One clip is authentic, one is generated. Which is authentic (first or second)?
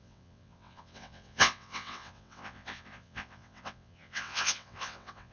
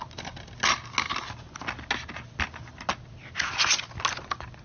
second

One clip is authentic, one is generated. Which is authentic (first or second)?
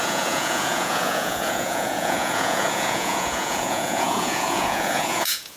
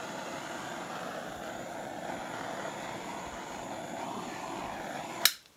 second